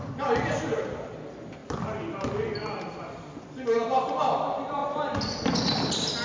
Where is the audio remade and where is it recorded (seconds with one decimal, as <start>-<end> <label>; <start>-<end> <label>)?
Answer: 0.0-6.2 recorded